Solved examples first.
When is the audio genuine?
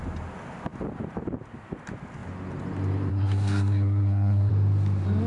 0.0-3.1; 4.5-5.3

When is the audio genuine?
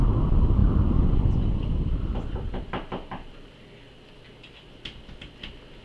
0.0-5.8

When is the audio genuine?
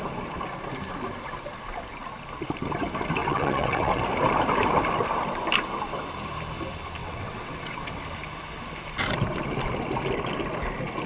0.0-3.2; 4.0-7.0; 8.0-11.1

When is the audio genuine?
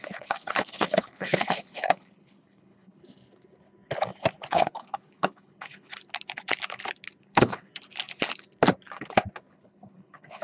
3.0-4.5; 5.9-7.2; 7.7-9.5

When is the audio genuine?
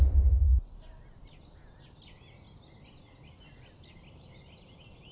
0.0-5.1